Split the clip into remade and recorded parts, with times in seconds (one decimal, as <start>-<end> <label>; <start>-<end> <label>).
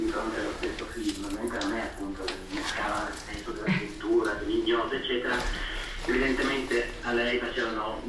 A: 0.0-2.2 recorded; 2.2-2.6 remade; 2.6-7.5 recorded; 7.5-8.1 remade